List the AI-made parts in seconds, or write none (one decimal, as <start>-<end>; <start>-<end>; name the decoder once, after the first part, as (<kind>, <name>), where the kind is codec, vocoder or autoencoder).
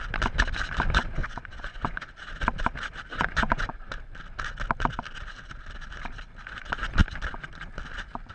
1.2-2.1 (vocoder, Vocos); 3.1-3.9